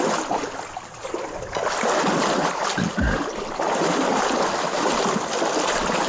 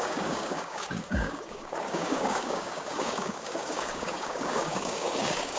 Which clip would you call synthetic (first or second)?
second